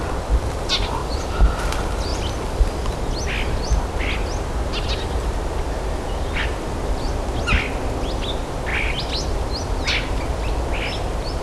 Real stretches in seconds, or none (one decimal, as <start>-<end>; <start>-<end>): 0.0-11.4